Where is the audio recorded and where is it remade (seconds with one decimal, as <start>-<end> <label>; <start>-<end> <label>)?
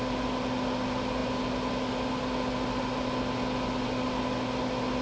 0.0-5.0 recorded